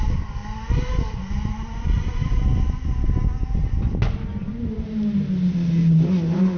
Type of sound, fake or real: real